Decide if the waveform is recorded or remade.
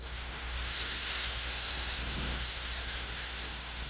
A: remade